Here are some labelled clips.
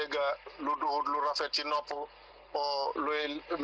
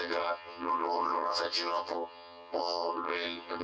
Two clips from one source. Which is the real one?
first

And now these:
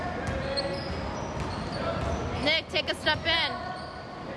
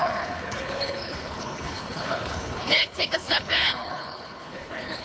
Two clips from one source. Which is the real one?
first